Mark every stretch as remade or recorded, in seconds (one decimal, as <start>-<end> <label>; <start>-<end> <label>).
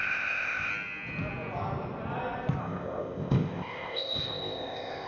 0.0-0.7 remade; 0.7-2.6 recorded; 2.6-5.1 remade